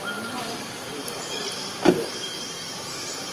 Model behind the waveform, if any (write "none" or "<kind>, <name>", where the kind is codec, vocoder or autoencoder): vocoder, BigVGAN v2